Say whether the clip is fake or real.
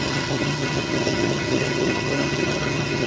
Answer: fake